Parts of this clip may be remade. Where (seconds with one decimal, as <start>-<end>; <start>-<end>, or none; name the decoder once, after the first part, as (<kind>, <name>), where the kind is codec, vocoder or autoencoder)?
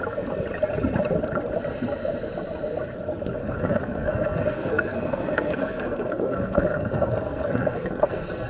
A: 3.4-8.5 (codec, SNAC)